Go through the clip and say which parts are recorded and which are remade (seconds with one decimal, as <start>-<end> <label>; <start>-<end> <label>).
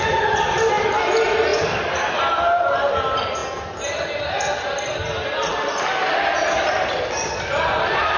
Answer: 0.0-8.2 recorded